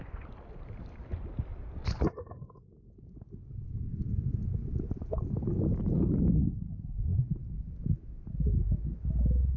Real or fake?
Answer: real